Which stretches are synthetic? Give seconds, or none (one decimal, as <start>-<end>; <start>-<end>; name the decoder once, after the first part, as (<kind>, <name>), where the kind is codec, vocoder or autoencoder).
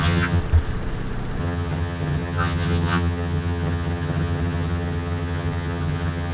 0.0-0.4 (vocoder, HiFi-GAN); 1.4-6.3